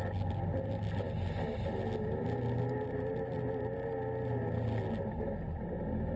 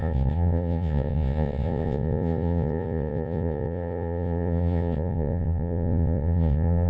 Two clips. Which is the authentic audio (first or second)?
first